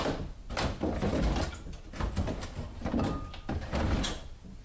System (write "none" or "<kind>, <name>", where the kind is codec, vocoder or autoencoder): none